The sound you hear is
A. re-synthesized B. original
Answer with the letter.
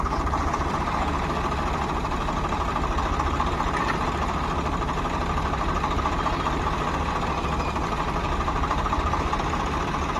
B